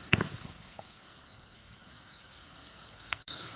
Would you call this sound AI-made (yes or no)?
yes